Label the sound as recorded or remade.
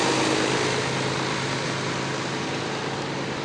recorded